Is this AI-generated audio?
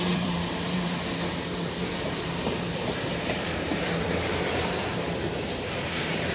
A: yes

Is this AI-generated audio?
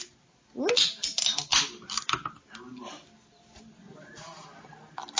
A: no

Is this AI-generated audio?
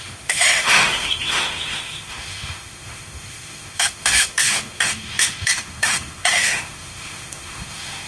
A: yes